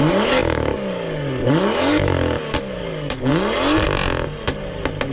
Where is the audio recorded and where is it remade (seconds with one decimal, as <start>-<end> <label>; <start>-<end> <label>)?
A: 0.0-3.3 remade; 3.3-5.1 recorded